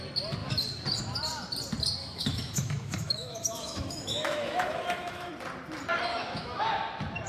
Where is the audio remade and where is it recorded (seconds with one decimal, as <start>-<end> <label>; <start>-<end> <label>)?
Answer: 0.0-2.0 recorded; 2.0-5.3 remade; 5.3-6.1 recorded; 6.1-6.6 remade; 6.6-7.3 recorded